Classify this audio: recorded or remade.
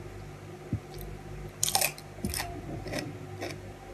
recorded